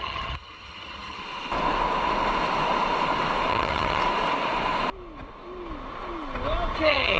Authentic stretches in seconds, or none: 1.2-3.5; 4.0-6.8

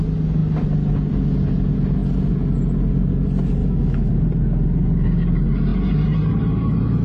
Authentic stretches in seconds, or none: 0.0-3.6; 4.1-7.0

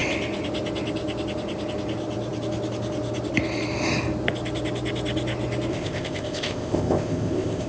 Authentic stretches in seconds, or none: 0.0-5.7

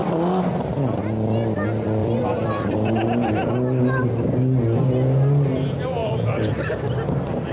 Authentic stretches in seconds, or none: 0.0-2.0; 3.3-6.0

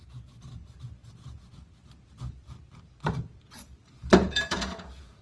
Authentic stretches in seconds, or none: 0.0-4.1

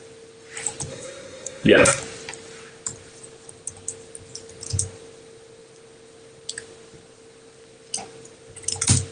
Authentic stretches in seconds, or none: 0.0-0.9; 2.0-9.1

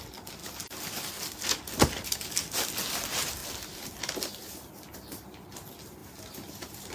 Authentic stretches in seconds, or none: 0.0-0.4; 1.0-4.4; 5.2-6.0

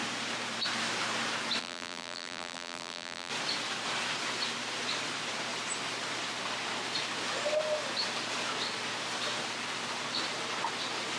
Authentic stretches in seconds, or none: 0.0-1.6; 3.3-11.2